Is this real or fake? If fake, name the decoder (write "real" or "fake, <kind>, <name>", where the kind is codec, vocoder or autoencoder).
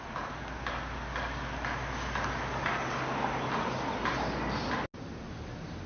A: real